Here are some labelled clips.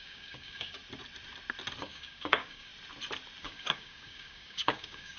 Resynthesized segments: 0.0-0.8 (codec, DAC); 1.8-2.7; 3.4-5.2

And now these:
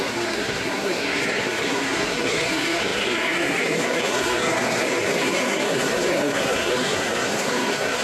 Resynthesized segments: 0.0-8.0 (codec, SNAC)